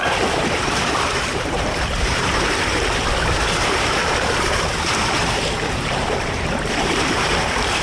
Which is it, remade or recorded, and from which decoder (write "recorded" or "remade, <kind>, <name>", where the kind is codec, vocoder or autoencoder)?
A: remade, vocoder, BigVGAN v2